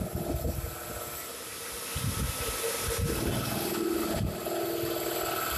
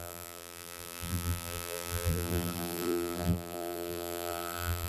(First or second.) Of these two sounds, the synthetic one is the second